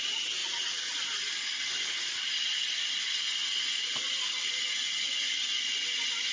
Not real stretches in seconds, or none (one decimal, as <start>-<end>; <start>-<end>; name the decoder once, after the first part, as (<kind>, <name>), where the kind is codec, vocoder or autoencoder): none

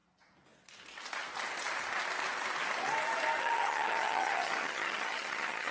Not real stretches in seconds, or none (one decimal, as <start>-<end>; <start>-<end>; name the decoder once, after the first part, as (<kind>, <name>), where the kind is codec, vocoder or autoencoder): 3.4-5.7 (vocoder, HiFi-GAN)

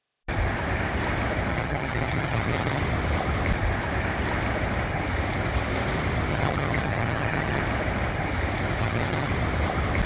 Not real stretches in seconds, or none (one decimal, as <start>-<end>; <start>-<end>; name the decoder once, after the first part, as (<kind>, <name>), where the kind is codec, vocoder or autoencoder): 1.5-2.8 (vocoder, HiFi-GAN); 6.3-7.6; 8.8-9.3

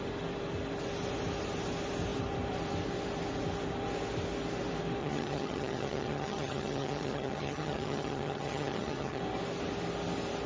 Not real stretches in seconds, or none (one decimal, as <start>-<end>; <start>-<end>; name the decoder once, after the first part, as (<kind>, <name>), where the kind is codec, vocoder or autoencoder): 5.0-9.2 (vocoder, HiFi-GAN)

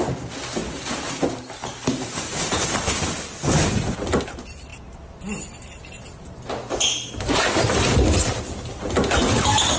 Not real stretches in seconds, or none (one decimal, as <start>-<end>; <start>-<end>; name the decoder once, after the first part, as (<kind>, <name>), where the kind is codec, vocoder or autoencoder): none

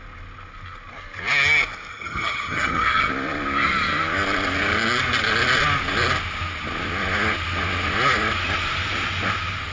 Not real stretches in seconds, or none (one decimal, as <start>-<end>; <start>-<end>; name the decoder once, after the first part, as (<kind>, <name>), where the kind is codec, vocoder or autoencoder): 1.9-3.1 (vocoder, HiFi-GAN)

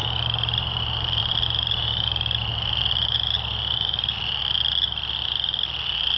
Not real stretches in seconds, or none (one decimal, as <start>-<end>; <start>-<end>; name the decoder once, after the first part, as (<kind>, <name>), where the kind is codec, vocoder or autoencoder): none

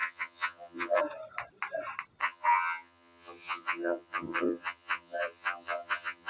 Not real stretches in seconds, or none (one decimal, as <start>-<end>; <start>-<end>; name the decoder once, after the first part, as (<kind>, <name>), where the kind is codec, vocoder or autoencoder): 0.0-1.0 (vocoder, HiFi-GAN); 2.2-6.3